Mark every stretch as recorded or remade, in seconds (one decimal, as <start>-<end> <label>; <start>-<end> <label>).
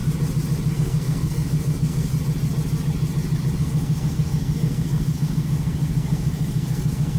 0.0-0.7 recorded; 0.7-2.1 remade; 2.1-3.6 recorded; 3.6-7.2 remade